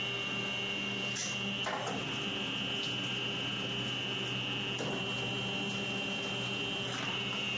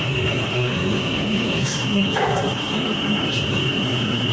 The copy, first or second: second